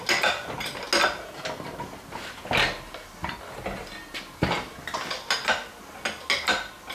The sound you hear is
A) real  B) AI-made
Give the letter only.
A